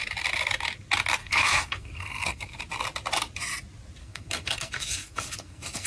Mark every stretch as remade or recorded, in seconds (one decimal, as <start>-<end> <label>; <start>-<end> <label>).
0.0-1.2 recorded; 1.2-2.6 remade; 2.6-4.0 recorded; 4.0-5.9 remade